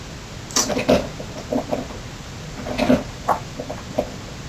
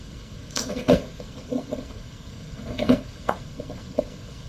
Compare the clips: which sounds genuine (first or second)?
first